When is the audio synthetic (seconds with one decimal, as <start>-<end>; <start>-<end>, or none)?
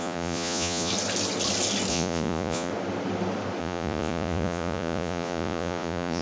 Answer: 0.0-0.9; 1.9-2.7; 3.6-6.2